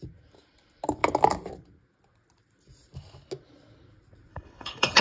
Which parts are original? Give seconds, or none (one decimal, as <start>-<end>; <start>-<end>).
0.0-4.3